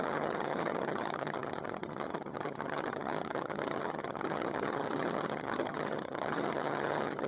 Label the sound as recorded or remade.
remade